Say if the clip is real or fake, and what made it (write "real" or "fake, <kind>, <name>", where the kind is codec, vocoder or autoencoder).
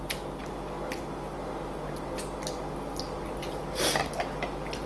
real